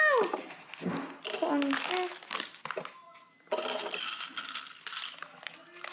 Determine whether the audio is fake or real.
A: real